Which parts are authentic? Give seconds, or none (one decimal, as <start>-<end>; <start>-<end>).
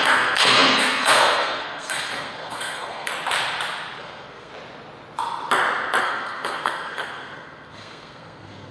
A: 3.1-4.0; 4.5-6.0